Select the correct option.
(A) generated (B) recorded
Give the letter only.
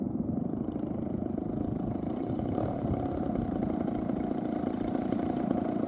A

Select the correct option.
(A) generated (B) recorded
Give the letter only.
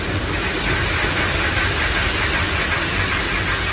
B